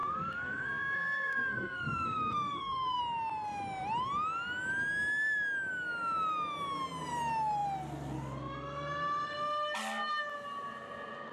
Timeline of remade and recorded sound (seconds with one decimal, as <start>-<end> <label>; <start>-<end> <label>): 0.0-3.0 remade; 3.0-11.3 recorded